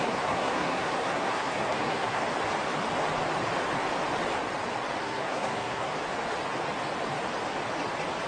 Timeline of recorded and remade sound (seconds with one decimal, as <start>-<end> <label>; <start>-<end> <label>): 0.0-2.2 remade; 2.2-5.0 recorded; 5.0-5.9 remade; 5.9-8.3 recorded